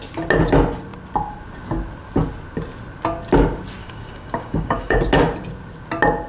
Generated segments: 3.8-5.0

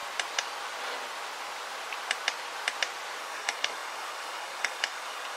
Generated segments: 3.2-5.4

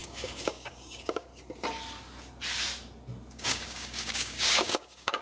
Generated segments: 0.0-1.3; 3.3-5.2

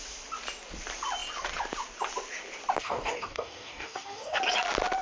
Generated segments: 2.8-4.4